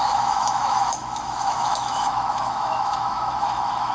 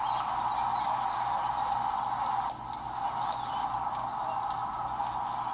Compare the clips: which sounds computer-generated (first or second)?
first